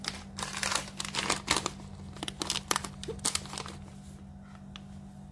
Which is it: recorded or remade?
recorded